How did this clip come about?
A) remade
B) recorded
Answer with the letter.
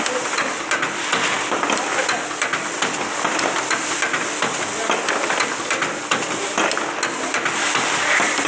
B